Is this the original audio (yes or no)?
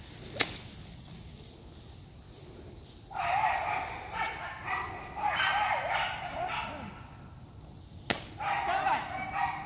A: yes